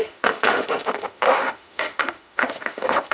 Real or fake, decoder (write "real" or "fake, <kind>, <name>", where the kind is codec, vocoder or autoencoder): fake, autoencoder, DAC-VAE